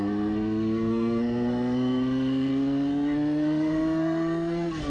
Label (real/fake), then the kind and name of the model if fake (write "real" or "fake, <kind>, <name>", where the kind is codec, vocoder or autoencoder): fake, codec, SNAC